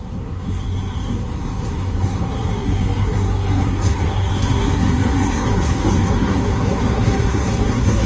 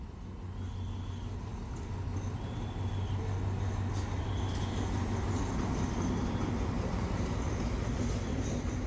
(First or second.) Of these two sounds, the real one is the second